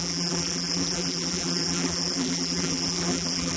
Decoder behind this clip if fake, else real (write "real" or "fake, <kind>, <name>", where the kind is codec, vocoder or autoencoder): fake, vocoder, BigVGAN v2